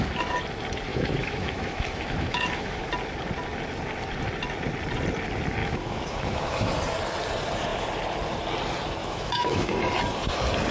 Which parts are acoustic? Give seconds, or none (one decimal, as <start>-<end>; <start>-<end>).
0.0-0.9; 2.9-5.6; 6.7-9.0; 9.7-10.7